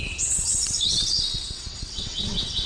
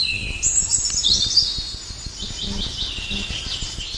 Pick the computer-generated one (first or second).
first